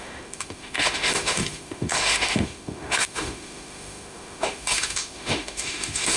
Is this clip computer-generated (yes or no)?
yes